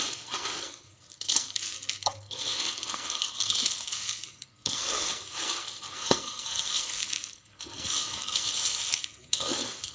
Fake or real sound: fake